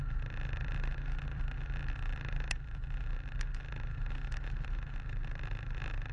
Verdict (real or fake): real